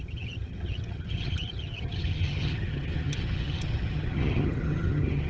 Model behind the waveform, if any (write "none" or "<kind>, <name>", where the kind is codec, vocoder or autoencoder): vocoder, HiFi-GAN